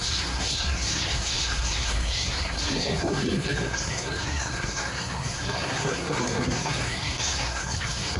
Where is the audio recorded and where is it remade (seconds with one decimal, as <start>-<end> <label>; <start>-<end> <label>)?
0.0-8.2 remade

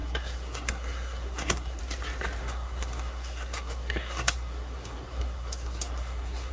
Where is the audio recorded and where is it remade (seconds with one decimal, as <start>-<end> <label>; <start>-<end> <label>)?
0.0-1.8 remade; 1.8-2.4 recorded; 2.4-6.5 remade